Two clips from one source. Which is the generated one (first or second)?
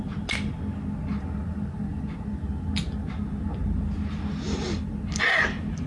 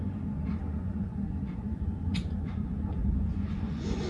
second